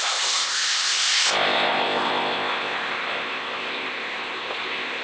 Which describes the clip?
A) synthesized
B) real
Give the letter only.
A